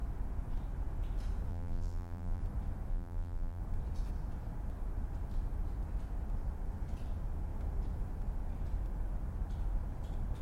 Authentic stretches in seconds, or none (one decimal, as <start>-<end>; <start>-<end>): 0.0-1.5; 2.4-2.9; 3.6-10.4